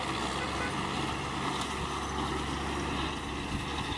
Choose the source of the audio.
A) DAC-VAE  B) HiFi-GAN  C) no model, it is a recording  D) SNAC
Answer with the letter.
C